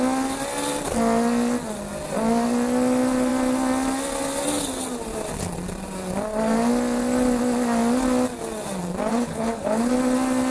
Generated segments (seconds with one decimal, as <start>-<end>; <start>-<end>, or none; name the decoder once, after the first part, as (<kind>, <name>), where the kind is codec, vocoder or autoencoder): 9.1-9.9 (codec, HILCodec)